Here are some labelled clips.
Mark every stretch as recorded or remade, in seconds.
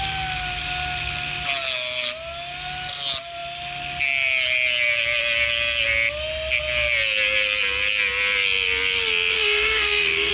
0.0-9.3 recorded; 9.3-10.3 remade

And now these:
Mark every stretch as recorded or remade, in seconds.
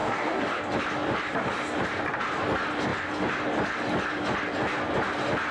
0.0-0.6 remade; 0.6-5.5 recorded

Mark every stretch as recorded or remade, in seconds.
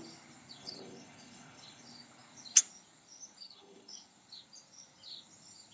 0.0-0.6 recorded; 0.6-1.8 remade; 1.8-3.4 recorded; 3.4-3.9 remade; 3.9-5.7 recorded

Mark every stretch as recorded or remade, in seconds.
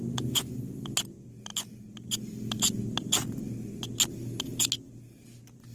0.0-5.7 recorded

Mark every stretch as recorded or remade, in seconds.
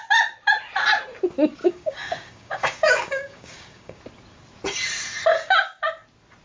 0.0-1.6 recorded; 1.6-4.0 remade; 4.0-5.3 recorded; 5.3-5.8 remade; 5.8-6.4 recorded